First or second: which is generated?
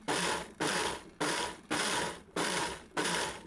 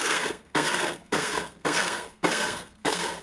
second